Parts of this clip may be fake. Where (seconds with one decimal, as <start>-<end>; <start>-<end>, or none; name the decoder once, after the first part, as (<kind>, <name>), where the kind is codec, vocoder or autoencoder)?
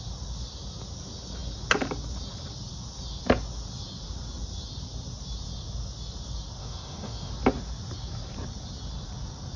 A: 6.6-7.3 (autoencoder, DAC-VAE)